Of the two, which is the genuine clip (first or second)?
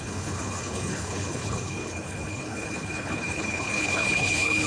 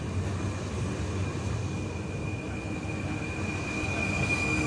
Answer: second